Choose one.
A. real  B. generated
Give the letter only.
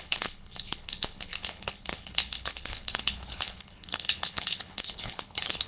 B